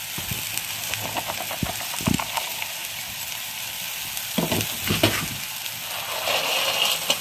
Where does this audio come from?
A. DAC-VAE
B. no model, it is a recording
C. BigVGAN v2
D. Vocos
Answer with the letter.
B